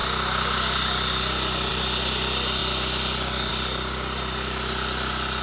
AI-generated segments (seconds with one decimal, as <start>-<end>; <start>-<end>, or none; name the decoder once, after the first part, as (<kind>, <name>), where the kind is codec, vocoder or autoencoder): none